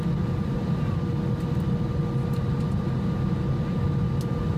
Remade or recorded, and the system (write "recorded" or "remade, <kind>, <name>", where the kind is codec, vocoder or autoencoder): recorded